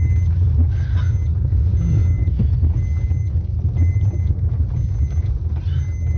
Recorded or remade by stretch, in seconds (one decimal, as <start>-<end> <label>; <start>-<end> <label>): 0.0-6.2 recorded